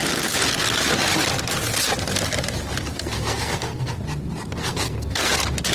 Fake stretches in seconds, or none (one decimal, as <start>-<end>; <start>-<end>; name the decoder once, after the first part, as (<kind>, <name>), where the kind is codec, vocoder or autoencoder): 2.9-4.0 (codec, SNAC); 4.6-5.3